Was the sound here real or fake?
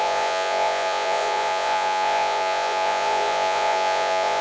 fake